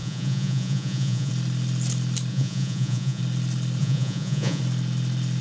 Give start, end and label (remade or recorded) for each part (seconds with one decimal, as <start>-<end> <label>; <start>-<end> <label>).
0.0-1.3 remade; 1.3-2.3 recorded; 2.3-3.2 remade; 3.2-3.8 recorded; 3.8-4.6 remade; 4.6-5.4 recorded